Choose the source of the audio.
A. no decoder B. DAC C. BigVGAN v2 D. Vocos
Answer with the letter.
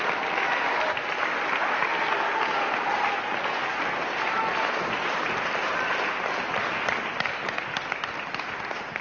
A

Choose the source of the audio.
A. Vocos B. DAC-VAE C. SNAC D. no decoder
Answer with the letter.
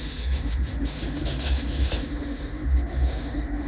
B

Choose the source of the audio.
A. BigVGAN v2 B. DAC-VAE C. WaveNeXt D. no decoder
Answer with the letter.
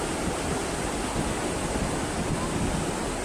D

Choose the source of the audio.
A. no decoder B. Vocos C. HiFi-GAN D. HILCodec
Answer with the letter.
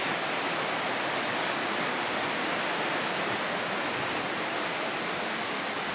A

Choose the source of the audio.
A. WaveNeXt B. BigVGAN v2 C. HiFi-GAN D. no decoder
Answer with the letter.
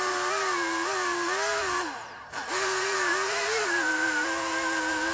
B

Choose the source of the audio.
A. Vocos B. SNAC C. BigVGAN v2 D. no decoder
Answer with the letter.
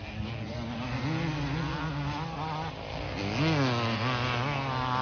D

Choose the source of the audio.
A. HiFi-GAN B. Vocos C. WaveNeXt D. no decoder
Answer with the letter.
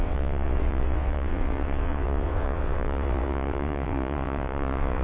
C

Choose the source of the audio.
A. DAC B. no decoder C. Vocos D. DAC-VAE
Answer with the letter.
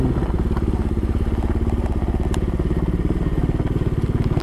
B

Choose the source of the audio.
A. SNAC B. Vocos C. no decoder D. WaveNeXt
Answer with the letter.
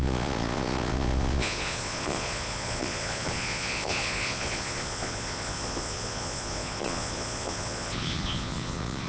B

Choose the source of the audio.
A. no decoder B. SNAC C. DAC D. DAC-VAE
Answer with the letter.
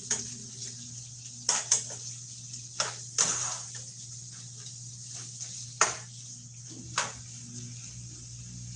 A